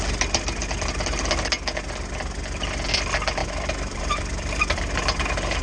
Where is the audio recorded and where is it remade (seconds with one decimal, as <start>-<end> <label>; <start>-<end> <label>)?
0.0-3.4 recorded; 3.4-4.8 remade; 4.8-5.6 recorded

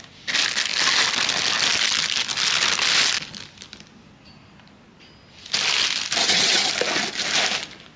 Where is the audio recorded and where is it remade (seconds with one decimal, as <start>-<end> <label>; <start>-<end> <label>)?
0.0-6.2 recorded; 6.2-6.7 remade; 6.7-8.0 recorded

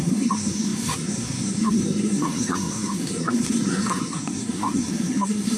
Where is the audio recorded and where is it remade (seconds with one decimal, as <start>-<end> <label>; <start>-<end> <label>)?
0.0-5.6 remade

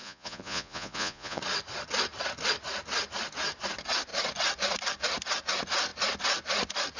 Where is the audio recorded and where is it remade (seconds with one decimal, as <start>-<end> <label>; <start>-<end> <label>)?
0.0-1.4 remade; 1.4-7.0 recorded

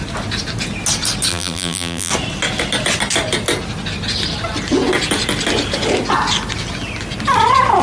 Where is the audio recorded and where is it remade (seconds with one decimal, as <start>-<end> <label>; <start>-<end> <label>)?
0.0-1.3 recorded; 1.3-2.1 remade; 2.1-7.8 recorded

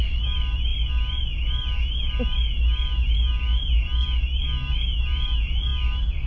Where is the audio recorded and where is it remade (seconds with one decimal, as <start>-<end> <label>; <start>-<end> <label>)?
0.0-6.3 recorded

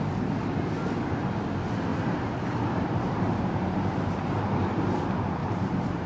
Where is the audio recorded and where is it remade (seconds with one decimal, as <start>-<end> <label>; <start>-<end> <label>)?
0.0-1.9 recorded; 1.9-4.4 remade; 4.4-5.4 recorded; 5.4-6.1 remade